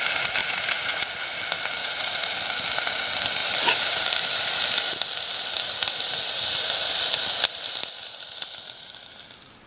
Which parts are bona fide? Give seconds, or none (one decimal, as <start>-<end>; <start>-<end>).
0.0-0.4; 1.1-1.8; 2.4-9.7